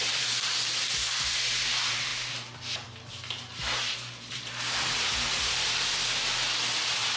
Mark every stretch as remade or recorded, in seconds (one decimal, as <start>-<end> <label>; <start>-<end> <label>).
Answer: 0.0-7.2 recorded